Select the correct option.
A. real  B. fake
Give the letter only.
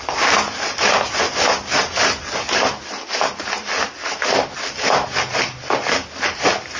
A